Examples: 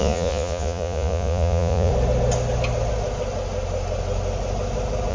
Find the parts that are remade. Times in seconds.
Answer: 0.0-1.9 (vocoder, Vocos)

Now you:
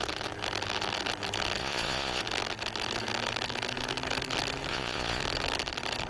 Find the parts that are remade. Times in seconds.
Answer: 1.6-2.2 (vocoder, Vocos); 4.7-5.2

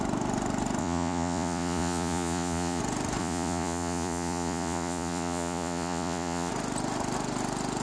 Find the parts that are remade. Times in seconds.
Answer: 0.8-2.8 (vocoder, Vocos); 3.2-6.5